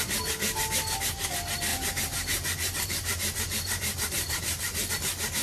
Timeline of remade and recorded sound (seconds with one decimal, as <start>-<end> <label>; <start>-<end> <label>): 0.0-1.7 recorded; 1.7-4.9 remade; 4.9-5.4 recorded

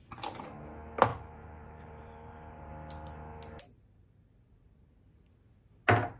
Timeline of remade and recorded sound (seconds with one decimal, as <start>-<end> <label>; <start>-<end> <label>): 0.0-1.1 recorded; 1.1-2.7 remade; 2.7-6.2 recorded